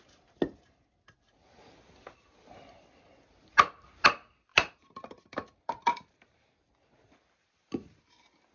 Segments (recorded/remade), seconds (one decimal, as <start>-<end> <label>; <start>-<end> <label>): 0.0-4.5 recorded; 4.5-6.5 remade; 6.5-8.5 recorded